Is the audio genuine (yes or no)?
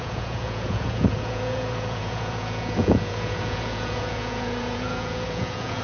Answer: no